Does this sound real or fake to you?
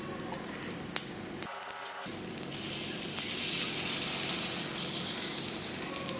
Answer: real